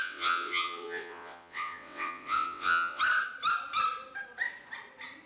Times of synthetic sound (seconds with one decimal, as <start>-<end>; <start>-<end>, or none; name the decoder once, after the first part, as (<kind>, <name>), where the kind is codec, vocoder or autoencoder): 0.0-3.0 (vocoder, WaveNeXt)